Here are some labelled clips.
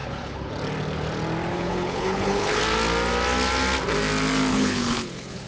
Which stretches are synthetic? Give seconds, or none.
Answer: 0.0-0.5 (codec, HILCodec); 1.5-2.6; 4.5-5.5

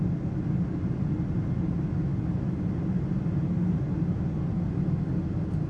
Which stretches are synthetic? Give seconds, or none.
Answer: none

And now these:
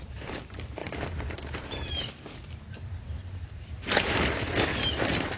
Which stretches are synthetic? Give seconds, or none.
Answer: 0.0-5.4 (vocoder, BigVGAN v2)

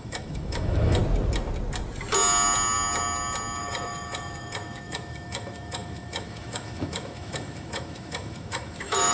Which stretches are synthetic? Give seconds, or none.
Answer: 0.0-1.0 (autoencoder, DAC-VAE); 3.6-9.1

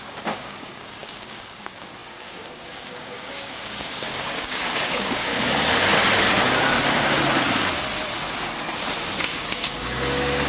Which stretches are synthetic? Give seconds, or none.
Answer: 0.0-5.3 (codec, DAC); 9.2-10.5

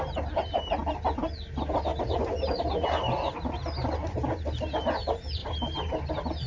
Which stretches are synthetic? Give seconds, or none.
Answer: 1.9-2.5 (vocoder, BigVGAN v2); 5.4-6.1

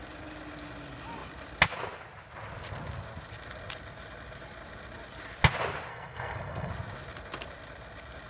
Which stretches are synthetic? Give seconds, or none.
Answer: 5.9-6.7 (codec, SNAC)